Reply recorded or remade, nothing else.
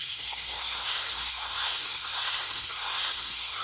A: remade